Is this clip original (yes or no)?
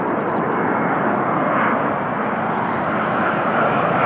yes